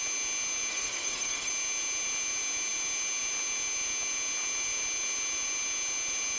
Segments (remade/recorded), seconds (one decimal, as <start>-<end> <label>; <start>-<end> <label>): 0.0-0.7 recorded; 0.7-1.5 remade; 1.5-6.4 recorded